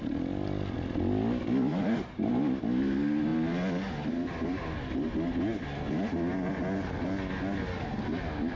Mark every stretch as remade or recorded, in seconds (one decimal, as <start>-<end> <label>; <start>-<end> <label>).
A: 0.0-1.7 recorded; 1.7-2.3 remade; 2.3-8.6 recorded